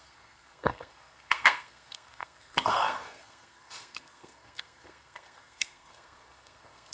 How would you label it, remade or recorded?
remade